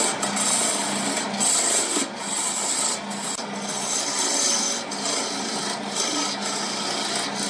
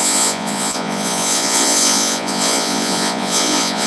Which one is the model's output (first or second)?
second